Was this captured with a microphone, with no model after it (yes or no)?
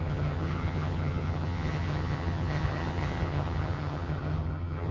no